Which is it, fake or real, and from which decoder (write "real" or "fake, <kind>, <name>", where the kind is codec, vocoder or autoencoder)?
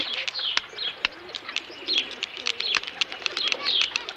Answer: fake, vocoder, BigVGAN v2